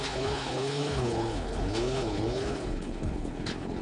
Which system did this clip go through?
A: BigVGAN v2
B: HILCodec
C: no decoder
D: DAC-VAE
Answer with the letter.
B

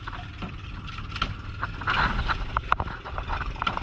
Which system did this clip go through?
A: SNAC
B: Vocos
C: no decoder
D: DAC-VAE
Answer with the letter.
C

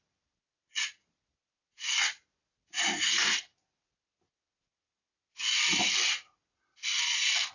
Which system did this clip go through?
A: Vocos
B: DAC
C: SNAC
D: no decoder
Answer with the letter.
D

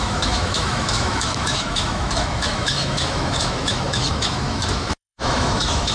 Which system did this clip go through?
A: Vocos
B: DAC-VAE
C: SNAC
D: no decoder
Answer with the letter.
B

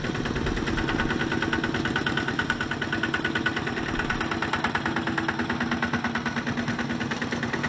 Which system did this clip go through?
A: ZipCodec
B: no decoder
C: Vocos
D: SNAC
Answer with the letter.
B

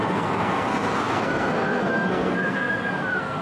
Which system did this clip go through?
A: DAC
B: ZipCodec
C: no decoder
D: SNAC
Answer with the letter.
D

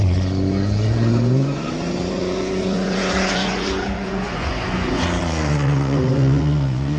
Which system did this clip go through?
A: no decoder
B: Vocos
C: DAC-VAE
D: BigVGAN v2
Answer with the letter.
B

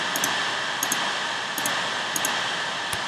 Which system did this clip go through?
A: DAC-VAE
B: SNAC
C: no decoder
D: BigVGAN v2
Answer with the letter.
C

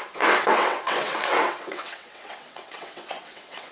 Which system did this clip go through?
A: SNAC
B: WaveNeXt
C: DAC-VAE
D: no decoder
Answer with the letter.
B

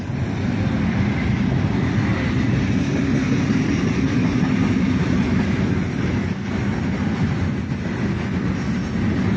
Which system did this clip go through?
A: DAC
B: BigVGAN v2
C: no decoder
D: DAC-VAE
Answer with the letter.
C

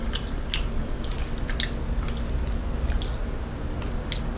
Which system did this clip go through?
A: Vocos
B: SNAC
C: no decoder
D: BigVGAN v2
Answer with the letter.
C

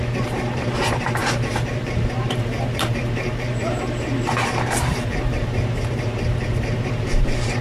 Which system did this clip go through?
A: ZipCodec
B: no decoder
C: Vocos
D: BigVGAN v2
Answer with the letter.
D